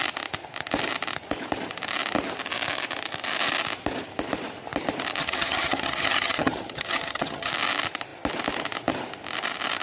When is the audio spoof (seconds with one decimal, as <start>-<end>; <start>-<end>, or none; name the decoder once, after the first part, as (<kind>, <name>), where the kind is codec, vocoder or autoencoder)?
5.2-7.5 (vocoder, HiFi-GAN)

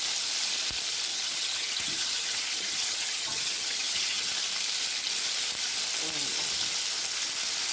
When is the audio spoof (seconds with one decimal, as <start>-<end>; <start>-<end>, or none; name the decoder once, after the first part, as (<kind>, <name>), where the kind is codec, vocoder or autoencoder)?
1.1-4.3 (vocoder, HiFi-GAN)

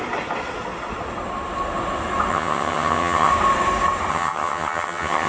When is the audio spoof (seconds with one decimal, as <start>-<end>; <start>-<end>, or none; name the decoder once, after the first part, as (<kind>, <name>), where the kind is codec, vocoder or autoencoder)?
2.3-3.3 (vocoder, HiFi-GAN); 4.1-5.3

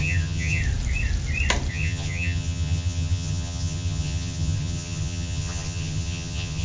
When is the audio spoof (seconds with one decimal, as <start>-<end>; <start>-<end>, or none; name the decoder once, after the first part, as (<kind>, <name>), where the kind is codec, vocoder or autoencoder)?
0.0-0.6 (vocoder, HiFi-GAN); 1.7-6.6

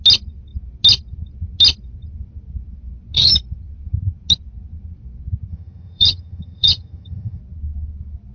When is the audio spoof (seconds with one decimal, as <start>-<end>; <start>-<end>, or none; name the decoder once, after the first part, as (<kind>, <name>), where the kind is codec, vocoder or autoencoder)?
5.5-7.4 (vocoder, HiFi-GAN)

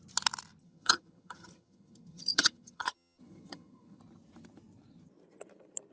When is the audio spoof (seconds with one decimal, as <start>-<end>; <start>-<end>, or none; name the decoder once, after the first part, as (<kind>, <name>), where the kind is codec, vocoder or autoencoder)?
0.6-4.0 (vocoder, HiFi-GAN)